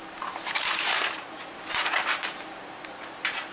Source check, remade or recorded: remade